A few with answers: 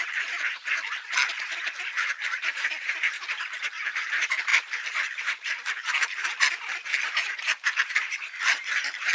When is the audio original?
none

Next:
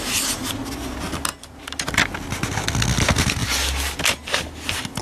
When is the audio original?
0.0-1.3; 1.9-5.0

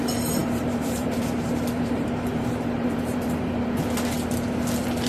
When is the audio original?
0.0-0.4; 3.5-5.1

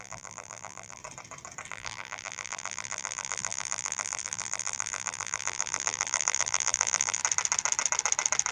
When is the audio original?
1.0-1.7; 7.2-8.5